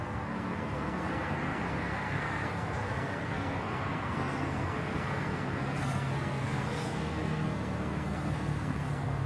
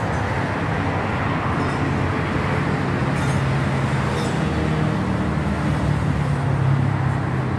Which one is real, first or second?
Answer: second